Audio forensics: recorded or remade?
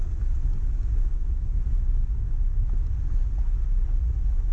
recorded